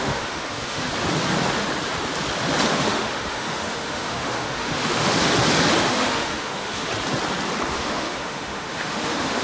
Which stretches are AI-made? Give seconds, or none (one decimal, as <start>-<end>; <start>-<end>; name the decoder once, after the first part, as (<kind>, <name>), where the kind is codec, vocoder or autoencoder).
0.0-0.9 (autoencoder, DAC-VAE); 2.7-5.2; 5.8-6.9; 7.7-9.4